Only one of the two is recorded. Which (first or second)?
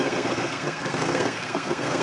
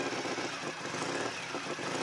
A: second